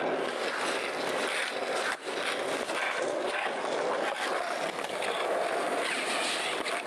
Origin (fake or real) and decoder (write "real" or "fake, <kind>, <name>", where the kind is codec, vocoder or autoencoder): real